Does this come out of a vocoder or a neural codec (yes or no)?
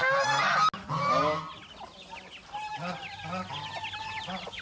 no